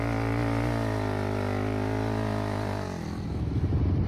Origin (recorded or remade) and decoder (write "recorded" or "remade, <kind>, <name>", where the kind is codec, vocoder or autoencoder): recorded